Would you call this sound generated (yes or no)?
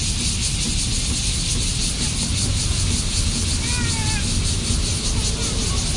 no